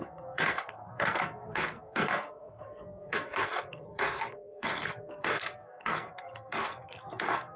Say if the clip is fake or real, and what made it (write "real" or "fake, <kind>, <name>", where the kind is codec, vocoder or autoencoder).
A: fake, codec, SNAC